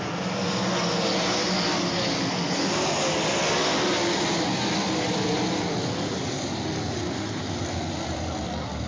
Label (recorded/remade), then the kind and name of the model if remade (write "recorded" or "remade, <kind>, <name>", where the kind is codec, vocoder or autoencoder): recorded